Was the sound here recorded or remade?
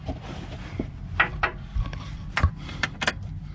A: remade